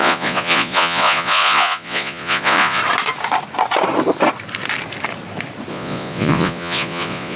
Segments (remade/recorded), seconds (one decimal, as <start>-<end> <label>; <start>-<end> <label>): 0.0-2.8 remade; 2.8-5.7 recorded; 5.7-7.4 remade